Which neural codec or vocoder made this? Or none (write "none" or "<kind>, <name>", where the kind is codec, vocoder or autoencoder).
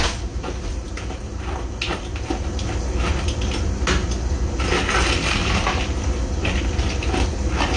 none